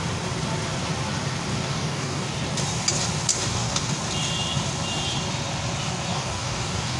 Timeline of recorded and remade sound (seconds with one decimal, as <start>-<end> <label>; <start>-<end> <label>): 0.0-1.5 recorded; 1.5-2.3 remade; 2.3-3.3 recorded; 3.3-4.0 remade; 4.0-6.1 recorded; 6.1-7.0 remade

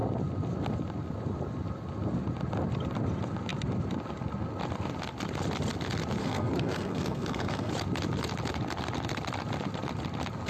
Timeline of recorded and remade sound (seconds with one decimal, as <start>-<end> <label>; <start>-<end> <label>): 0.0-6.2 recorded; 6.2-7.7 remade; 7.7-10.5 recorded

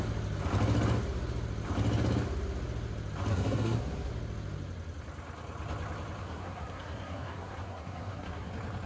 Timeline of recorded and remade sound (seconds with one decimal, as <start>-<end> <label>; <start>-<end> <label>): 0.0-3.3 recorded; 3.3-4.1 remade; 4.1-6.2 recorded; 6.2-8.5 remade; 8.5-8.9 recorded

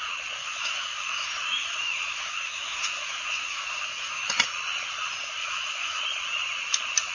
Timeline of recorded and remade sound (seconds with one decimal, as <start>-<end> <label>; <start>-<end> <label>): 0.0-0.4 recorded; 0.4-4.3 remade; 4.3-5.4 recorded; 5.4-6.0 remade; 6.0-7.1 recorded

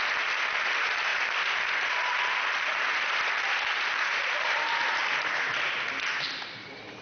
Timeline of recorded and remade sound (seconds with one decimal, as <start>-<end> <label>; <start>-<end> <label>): 0.0-7.0 recorded